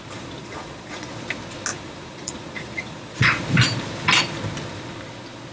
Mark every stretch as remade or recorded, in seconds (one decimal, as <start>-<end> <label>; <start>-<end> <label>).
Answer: 0.0-0.4 recorded; 0.4-1.1 remade; 1.1-1.7 recorded; 1.7-3.4 remade; 3.4-5.5 recorded